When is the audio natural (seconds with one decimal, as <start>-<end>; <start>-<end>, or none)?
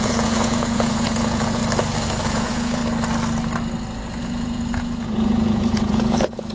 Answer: 1.6-2.2; 2.8-4.2